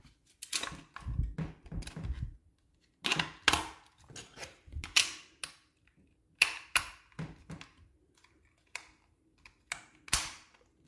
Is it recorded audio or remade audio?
recorded